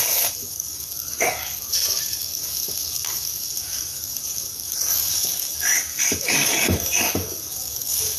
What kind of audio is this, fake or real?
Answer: fake